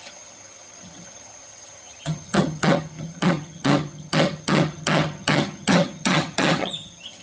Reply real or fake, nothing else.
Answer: fake